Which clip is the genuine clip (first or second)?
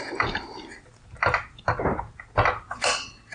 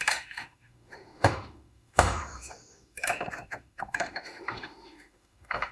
first